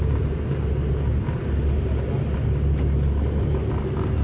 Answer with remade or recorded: recorded